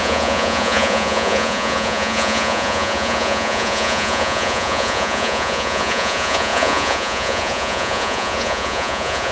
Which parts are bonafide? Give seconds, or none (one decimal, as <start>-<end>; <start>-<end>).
none